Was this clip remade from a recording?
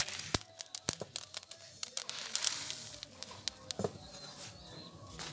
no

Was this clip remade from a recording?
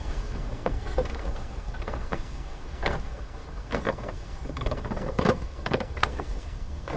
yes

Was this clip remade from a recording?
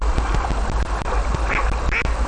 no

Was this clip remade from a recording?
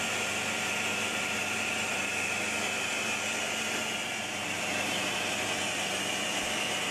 no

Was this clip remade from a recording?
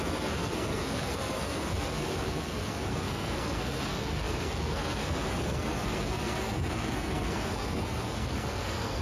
yes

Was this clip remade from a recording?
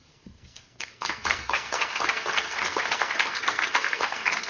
yes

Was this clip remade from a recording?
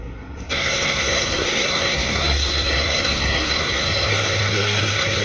yes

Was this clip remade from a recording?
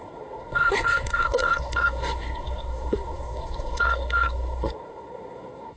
yes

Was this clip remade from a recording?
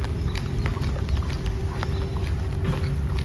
no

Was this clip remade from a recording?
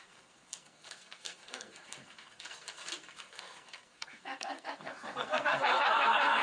yes